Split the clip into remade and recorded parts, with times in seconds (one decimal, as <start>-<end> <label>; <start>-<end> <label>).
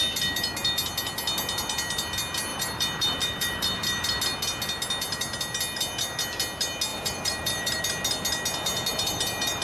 0.0-2.5 recorded; 2.5-4.2 remade; 4.2-6.9 recorded; 6.9-7.8 remade; 7.8-8.9 recorded; 8.9-9.6 remade